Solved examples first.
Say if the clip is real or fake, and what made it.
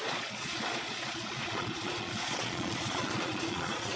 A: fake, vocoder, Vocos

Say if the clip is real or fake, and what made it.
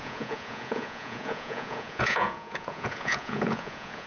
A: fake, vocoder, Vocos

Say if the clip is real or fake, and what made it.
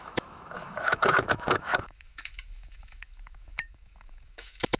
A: fake, autoencoder, DAC-VAE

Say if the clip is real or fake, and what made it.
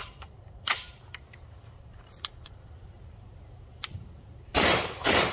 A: fake, vocoder, BigVGAN v2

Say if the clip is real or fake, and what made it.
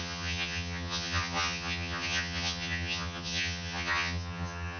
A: fake, vocoder, HiFi-GAN